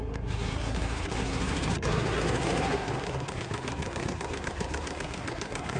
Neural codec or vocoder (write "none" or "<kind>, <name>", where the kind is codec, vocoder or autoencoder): codec, SNAC